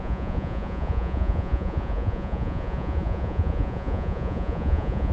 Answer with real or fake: fake